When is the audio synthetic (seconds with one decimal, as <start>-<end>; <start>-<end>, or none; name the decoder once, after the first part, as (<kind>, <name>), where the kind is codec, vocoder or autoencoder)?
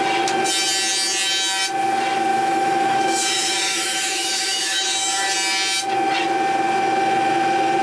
2.3-5.3 (autoencoder, DAC-VAE)